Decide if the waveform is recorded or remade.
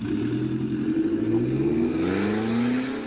recorded